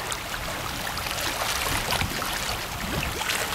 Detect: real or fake real